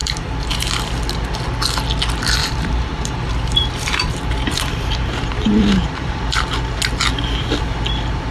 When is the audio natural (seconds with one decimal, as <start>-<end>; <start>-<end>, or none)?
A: 0.7-2.4; 6.2-8.3